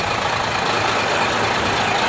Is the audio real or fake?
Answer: real